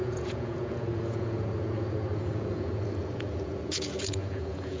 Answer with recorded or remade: remade